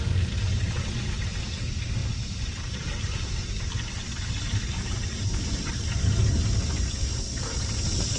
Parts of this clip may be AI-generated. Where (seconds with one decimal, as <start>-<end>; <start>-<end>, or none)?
2.0-3.6; 4.4-5.7